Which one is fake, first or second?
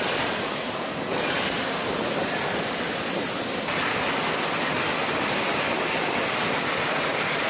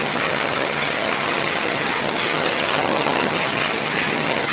second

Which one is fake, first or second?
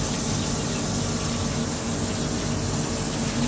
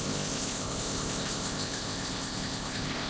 second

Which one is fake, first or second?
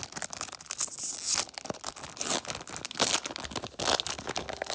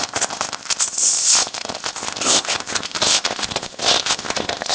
second